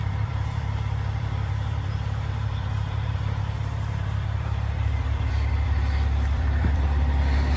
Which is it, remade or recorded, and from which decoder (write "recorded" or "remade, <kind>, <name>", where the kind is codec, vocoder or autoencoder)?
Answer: remade, vocoder, BigVGAN v2